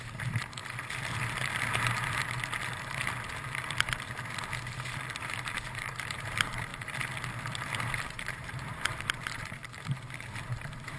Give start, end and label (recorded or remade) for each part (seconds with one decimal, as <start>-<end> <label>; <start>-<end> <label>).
0.0-0.6 remade; 0.6-5.2 recorded; 5.2-6.7 remade; 6.7-7.8 recorded; 7.8-11.0 remade

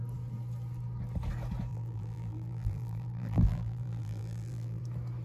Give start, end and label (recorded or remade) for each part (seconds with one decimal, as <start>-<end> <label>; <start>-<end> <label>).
0.0-1.7 recorded; 1.7-4.8 remade; 4.8-5.2 recorded